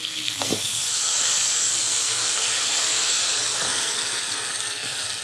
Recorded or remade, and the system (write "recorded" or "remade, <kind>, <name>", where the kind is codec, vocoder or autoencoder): remade, codec, SNAC